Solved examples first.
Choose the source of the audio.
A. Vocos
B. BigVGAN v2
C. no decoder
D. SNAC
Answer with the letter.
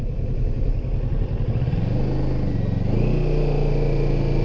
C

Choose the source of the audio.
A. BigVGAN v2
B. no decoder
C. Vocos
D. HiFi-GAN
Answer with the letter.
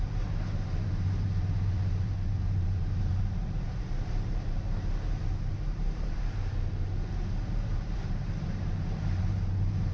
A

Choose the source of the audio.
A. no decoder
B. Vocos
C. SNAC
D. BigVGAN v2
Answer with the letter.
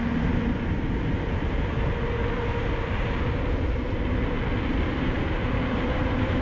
D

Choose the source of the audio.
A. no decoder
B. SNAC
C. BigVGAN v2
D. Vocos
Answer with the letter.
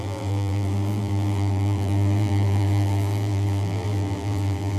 C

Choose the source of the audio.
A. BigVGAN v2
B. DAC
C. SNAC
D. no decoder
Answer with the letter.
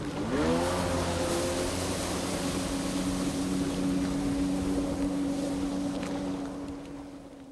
D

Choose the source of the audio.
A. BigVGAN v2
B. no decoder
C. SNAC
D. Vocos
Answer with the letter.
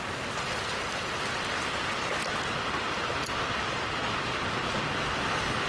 B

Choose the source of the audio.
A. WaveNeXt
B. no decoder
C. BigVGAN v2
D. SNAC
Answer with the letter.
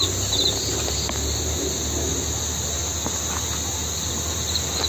B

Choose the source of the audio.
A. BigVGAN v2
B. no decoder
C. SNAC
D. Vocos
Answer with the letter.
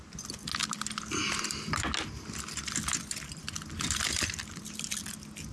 B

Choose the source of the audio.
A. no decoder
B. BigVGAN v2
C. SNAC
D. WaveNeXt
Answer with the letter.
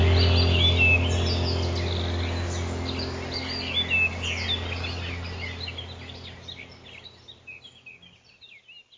A